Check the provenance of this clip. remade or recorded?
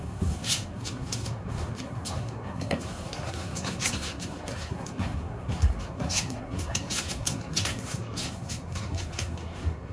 remade